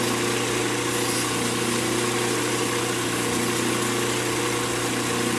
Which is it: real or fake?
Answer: real